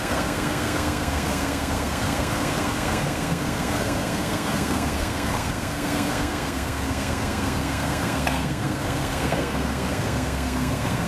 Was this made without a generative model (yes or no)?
no